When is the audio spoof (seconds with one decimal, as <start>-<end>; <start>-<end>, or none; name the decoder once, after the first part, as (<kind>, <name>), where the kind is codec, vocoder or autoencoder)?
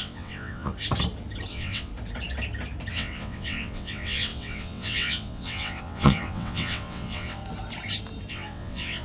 0.0-0.7 (vocoder, WaveNeXt); 1.5-1.9; 2.9-7.4; 8.3-9.0